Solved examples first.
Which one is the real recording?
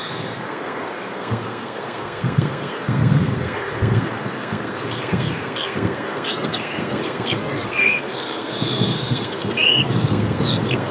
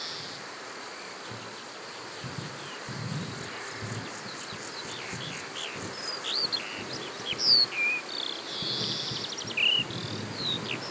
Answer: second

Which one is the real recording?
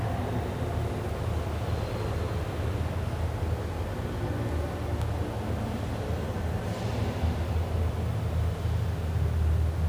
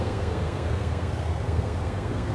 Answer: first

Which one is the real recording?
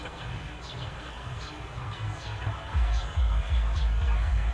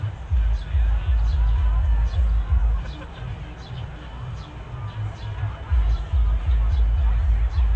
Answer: second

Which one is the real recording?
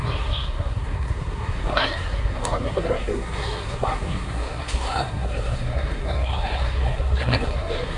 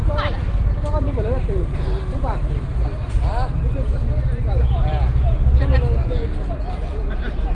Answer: second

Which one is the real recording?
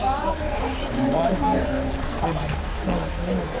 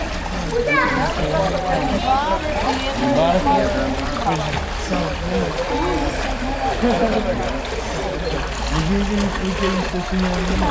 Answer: second